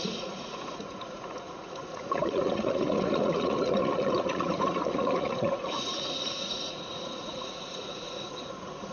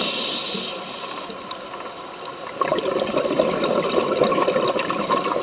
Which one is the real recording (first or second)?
second